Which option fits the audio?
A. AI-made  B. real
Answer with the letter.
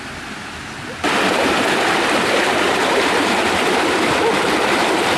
B